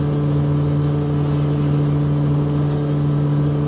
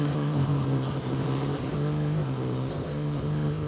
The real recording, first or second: first